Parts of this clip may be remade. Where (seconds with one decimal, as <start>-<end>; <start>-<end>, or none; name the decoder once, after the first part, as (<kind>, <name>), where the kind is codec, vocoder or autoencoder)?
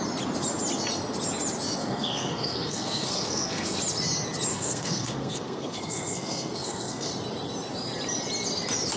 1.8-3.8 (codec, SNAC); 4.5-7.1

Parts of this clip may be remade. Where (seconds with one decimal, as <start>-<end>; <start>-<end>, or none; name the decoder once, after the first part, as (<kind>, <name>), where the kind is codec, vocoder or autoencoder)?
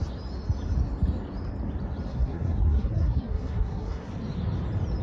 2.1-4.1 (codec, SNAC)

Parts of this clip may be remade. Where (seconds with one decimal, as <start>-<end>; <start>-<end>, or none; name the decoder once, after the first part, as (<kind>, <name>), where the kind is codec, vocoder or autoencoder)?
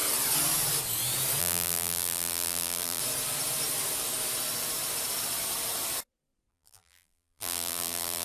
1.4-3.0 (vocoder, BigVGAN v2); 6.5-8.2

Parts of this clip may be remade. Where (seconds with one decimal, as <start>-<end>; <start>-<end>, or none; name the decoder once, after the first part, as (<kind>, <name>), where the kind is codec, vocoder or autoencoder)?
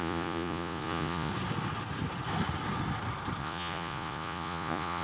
0.0-1.3 (vocoder, Vocos); 3.4-5.0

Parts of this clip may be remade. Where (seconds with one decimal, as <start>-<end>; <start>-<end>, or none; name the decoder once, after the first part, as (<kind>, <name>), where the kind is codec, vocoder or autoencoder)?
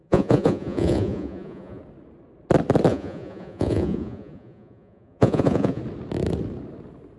0.0-1.8 (vocoder, Vocos); 2.9-5.8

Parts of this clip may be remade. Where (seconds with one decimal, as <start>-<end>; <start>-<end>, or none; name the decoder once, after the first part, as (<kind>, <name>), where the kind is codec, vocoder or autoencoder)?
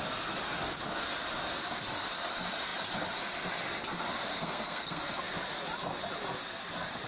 4.3-5.2 (codec, SNAC)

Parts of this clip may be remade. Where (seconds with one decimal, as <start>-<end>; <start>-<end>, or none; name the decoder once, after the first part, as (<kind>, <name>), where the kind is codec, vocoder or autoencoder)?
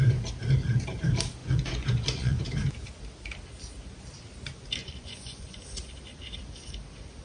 1.4-2.4 (vocoder, Vocos); 4.8-5.6